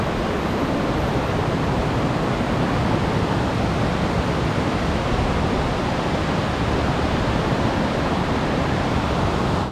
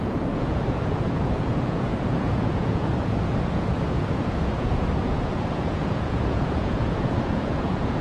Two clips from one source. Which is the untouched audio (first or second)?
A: first